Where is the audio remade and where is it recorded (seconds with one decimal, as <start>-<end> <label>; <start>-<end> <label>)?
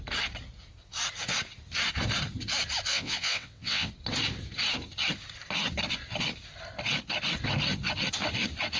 0.0-2.9 recorded; 2.9-3.9 remade; 3.9-8.8 recorded